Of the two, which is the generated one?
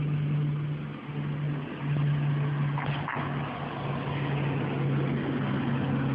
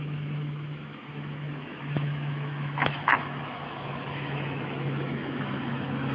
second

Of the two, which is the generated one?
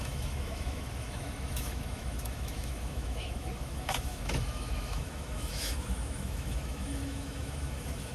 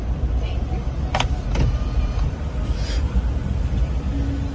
first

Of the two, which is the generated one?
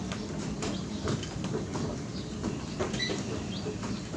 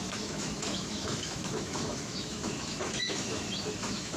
second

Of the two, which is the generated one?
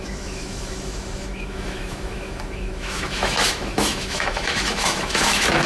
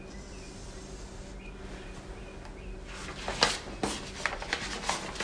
first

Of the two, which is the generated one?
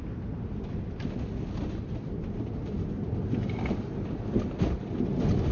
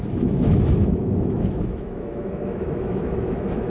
second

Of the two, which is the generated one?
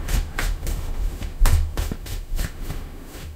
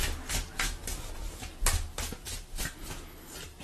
first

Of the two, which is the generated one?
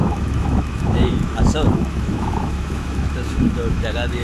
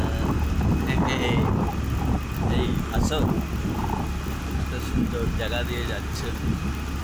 first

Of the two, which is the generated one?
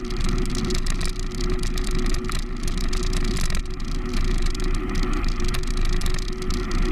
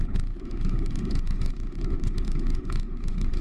second